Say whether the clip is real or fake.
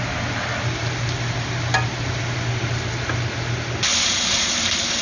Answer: real